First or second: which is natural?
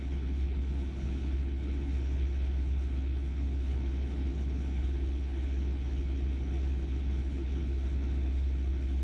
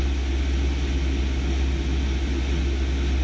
second